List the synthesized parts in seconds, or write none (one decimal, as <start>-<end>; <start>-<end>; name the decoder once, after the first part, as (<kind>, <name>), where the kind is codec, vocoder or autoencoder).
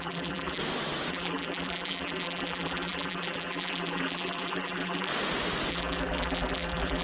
0.0-0.6 (vocoder, BigVGAN v2); 1.1-5.1; 5.7-7.0